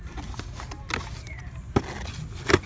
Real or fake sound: real